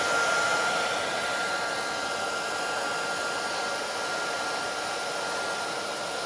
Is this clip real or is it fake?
real